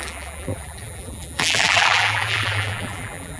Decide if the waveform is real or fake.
fake